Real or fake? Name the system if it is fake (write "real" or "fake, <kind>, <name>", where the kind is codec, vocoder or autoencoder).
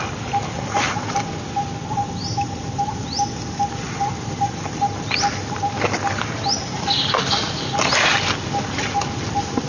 real